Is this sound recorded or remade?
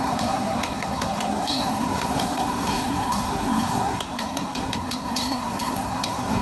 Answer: remade